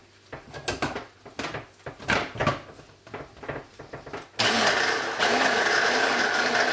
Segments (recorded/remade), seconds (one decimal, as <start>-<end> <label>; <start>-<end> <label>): 0.0-6.7 recorded